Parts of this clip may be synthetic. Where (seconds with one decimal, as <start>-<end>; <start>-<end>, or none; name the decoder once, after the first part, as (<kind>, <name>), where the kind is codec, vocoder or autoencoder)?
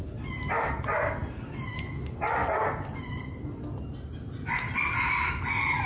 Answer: none